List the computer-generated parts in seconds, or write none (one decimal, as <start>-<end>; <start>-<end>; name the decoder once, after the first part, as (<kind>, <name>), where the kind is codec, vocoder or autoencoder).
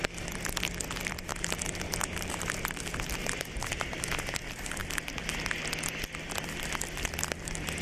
1.3-2.8 (vocoder, BigVGAN v2); 3.2-4.0